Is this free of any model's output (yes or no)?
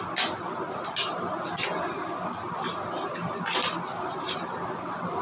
yes